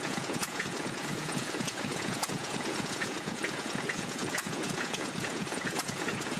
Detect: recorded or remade remade